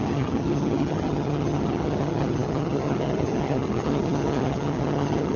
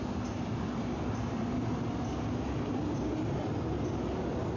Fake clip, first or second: first